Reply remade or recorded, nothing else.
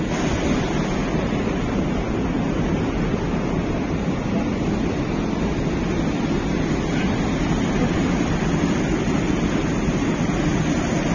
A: recorded